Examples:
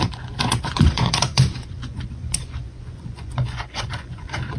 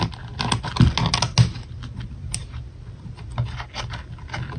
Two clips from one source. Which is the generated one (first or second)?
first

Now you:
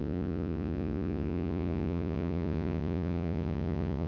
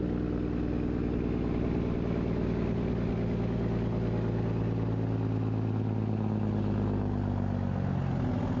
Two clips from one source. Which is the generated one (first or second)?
first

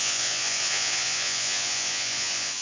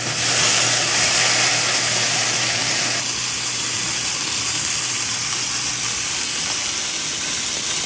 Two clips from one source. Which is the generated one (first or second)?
first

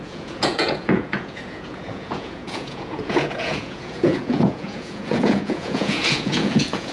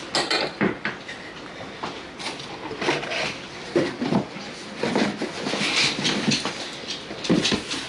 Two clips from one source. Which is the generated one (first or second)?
first